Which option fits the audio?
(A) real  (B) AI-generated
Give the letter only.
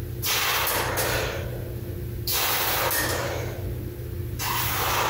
A